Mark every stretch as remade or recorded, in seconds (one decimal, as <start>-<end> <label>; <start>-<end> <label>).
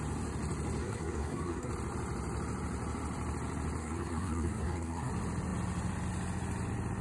0.0-0.8 recorded; 0.8-1.7 remade; 1.7-3.8 recorded; 3.8-5.1 remade; 5.1-7.0 recorded